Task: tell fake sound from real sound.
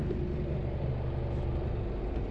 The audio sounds real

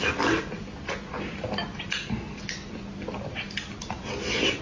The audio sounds real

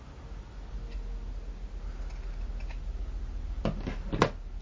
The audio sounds real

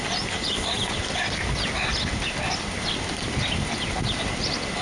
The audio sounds real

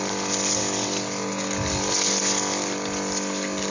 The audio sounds real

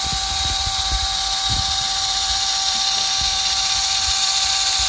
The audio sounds real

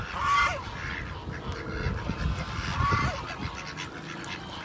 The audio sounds real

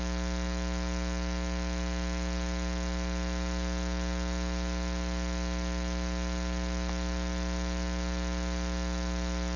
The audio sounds real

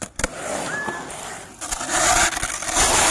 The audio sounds real